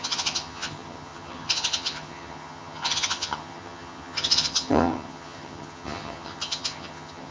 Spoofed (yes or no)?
yes